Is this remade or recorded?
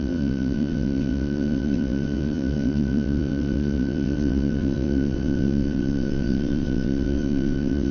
remade